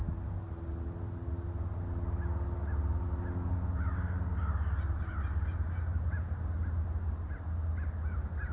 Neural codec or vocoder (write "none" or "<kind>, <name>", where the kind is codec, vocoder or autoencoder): none